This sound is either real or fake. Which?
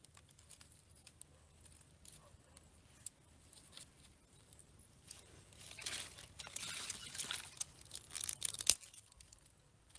real